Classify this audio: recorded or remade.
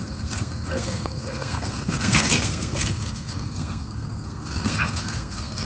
remade